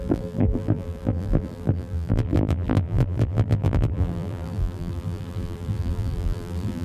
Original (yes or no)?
no